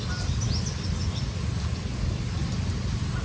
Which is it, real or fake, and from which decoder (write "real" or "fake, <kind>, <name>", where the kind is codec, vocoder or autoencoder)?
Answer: real